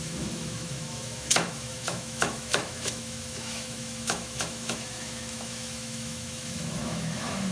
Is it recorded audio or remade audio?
remade